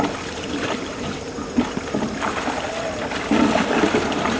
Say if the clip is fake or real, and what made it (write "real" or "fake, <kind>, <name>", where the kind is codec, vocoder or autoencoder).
real